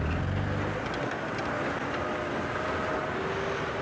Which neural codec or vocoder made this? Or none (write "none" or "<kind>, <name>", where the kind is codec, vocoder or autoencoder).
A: none